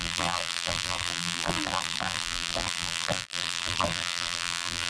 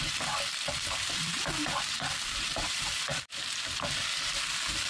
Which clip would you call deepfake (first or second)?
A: first